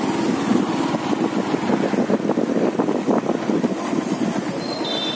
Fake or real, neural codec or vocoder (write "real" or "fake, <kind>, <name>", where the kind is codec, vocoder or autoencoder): real